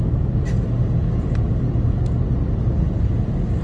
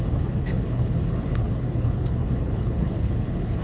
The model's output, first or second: second